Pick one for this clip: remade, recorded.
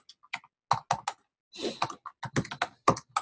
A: recorded